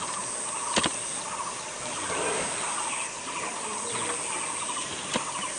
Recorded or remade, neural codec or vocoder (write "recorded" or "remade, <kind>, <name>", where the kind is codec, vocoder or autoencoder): recorded